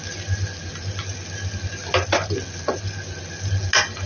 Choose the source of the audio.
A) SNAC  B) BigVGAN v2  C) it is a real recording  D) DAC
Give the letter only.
C